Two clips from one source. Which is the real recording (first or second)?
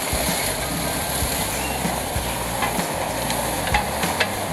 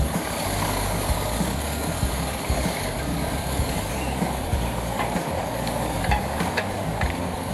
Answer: first